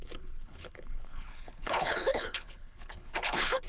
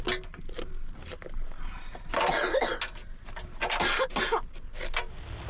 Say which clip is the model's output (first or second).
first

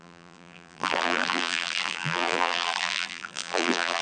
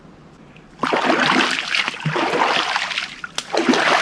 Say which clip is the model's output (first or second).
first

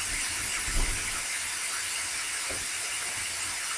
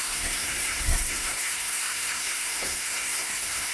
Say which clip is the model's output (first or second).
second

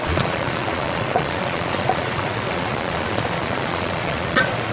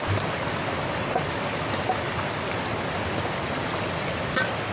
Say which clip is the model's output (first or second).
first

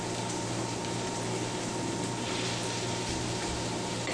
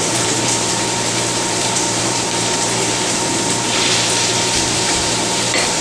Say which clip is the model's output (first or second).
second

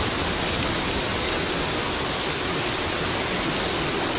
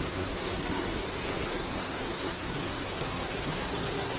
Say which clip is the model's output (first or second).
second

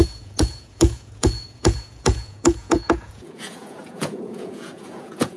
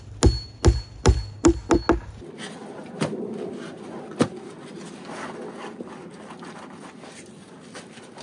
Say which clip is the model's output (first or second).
first